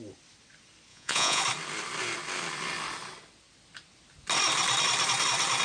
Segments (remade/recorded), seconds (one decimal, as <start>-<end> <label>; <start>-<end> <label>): 0.0-0.9 recorded; 0.9-1.4 remade; 1.4-5.6 recorded